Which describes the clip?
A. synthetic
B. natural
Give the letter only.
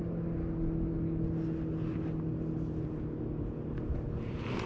B